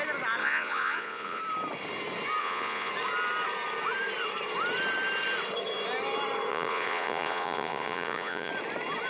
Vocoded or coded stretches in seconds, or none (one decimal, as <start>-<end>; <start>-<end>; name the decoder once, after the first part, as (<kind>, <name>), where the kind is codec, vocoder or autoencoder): 0.4-1.4 (vocoder, Vocos); 2.4-2.9; 6.5-8.5